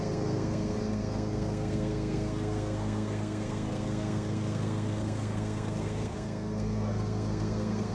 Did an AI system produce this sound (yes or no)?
yes